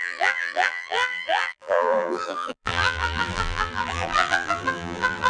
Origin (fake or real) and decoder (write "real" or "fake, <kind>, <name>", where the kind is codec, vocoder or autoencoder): fake, vocoder, BigVGAN v2